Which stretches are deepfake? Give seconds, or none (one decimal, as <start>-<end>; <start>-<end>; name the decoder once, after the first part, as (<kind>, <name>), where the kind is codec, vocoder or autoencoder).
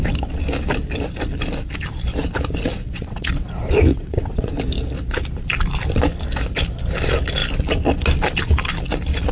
2.7-3.5 (vocoder, WaveNeXt); 3.9-4.5